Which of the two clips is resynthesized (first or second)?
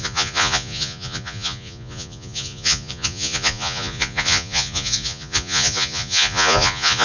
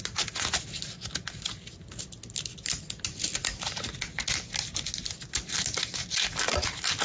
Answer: first